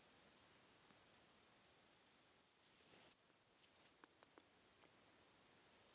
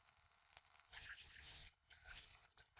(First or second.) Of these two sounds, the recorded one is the first